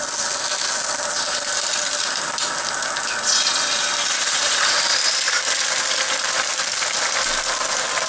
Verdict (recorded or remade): recorded